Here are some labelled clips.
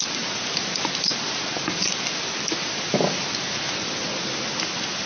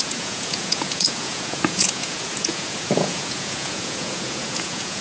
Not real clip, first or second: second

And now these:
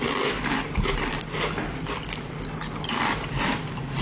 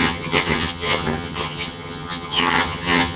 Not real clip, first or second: second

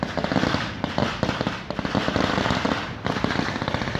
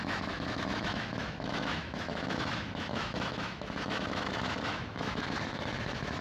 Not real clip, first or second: second